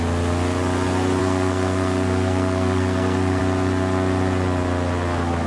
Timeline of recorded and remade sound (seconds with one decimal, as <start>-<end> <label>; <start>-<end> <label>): 0.0-1.2 recorded; 1.2-3.4 remade; 3.4-5.5 recorded